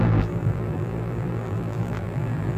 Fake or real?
fake